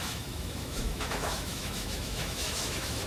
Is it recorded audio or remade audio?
remade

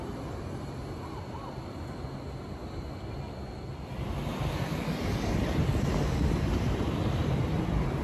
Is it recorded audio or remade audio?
recorded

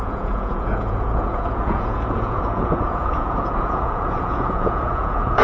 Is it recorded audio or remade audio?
remade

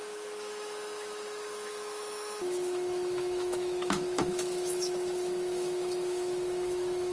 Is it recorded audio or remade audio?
remade